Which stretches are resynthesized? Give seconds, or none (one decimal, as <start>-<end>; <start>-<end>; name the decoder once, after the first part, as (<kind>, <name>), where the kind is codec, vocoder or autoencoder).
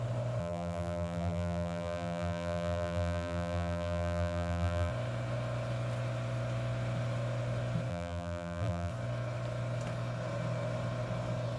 0.4-4.9 (vocoder, BigVGAN v2); 7.9-8.9